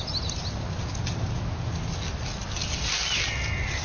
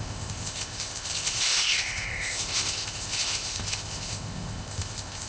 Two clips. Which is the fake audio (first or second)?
second